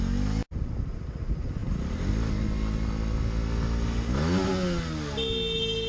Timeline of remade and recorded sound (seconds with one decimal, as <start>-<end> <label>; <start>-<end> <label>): 0.0-5.9 recorded